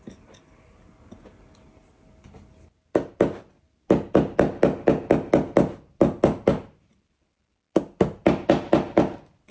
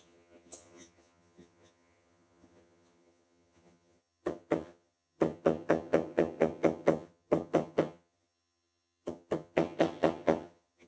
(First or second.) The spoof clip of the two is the second